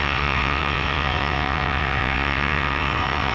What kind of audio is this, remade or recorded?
remade